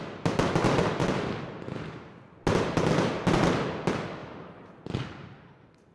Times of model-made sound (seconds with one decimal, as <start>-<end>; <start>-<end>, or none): 1.0-1.8